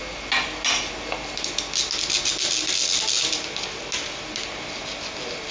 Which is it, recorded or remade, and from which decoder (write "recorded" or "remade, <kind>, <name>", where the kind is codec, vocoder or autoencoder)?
recorded